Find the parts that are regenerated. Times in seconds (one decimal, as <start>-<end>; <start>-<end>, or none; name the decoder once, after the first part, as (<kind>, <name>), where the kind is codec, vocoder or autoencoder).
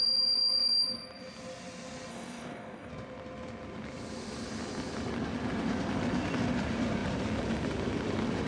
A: 2.1-2.9 (codec, DAC)